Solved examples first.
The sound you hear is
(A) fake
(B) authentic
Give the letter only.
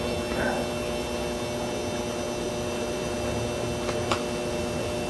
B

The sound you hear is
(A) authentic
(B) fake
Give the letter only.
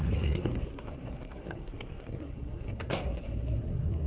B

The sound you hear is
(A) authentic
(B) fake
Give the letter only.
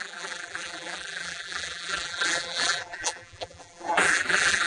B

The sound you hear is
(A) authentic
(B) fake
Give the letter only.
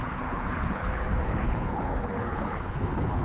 B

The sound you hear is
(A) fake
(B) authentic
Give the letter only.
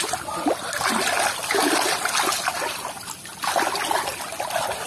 B